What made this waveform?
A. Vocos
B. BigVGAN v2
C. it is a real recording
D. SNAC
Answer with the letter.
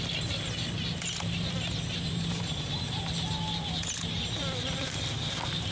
C